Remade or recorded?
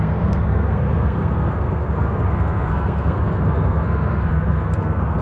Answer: remade